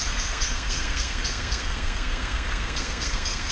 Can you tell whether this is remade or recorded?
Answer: remade